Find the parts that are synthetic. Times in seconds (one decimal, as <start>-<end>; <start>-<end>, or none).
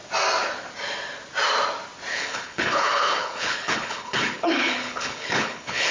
2.1-5.9